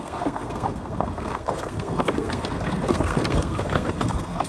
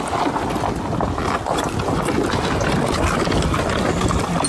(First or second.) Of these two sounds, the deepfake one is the first